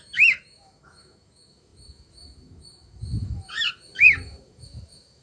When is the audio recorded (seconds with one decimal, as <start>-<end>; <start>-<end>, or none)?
none